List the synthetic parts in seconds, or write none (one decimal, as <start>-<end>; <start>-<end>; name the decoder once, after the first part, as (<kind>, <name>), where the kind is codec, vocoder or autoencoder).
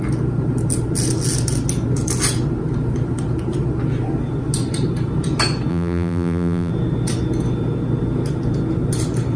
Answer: 5.7-6.7 (vocoder, BigVGAN v2)